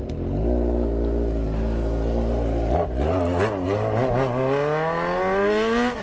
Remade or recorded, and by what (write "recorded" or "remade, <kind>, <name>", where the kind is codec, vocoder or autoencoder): recorded